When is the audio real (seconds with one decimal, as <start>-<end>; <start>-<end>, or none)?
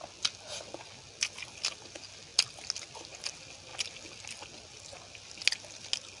0.0-6.2